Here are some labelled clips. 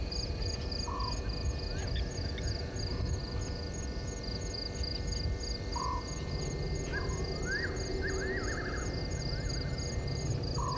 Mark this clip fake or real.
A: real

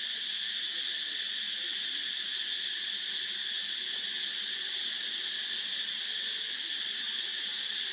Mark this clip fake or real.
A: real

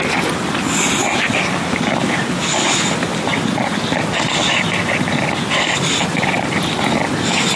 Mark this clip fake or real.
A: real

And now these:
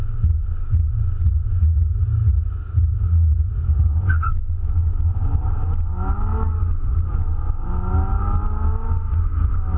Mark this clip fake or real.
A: real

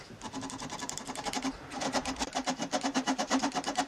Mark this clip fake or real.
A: fake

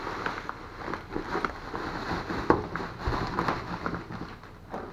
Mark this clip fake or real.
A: real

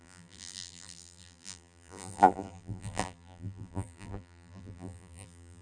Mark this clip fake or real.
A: fake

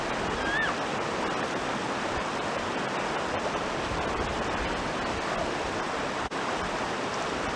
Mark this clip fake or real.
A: real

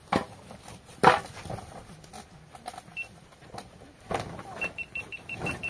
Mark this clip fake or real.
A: fake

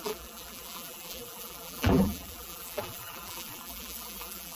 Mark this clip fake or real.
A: fake